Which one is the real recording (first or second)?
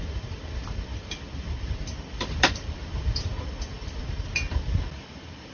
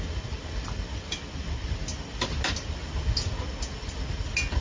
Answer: second